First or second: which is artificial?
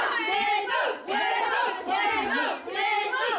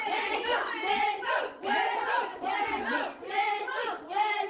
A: second